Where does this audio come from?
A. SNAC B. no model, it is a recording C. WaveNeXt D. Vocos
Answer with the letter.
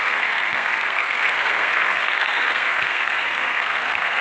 A